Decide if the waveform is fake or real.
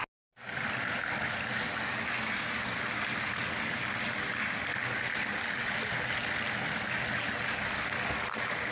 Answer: real